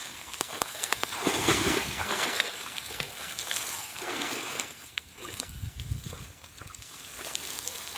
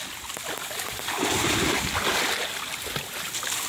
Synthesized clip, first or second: first